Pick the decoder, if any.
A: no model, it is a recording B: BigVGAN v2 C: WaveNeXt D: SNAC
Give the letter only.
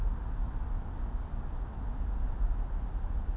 A